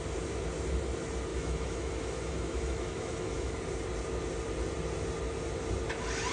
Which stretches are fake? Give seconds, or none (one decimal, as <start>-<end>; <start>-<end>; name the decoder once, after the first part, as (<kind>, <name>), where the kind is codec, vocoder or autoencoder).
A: 1.3-3.5 (autoencoder, DAC-VAE)